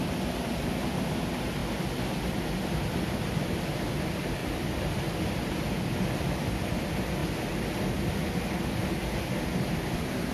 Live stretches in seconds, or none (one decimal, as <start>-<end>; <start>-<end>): 0.0-4.4; 5.7-10.3